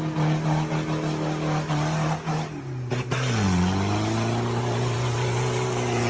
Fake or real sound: real